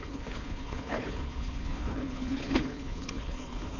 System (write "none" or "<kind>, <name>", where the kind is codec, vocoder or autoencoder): codec, HILCodec